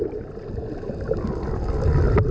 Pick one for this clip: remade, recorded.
recorded